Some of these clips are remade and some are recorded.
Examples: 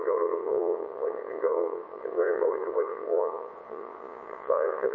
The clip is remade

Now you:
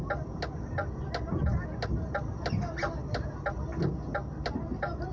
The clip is recorded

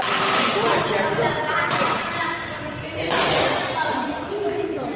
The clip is recorded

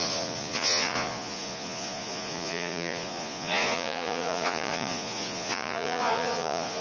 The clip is remade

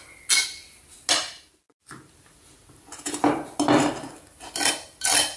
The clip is recorded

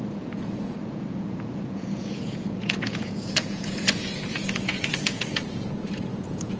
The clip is remade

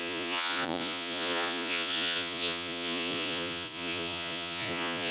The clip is remade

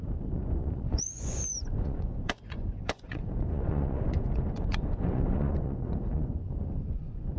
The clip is remade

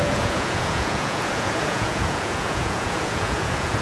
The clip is remade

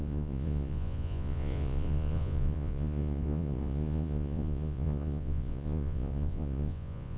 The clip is remade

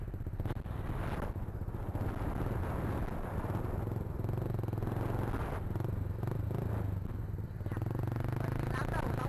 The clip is recorded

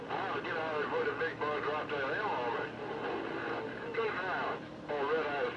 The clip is recorded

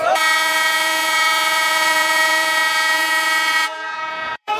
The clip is remade